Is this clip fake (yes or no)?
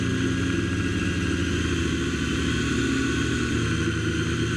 no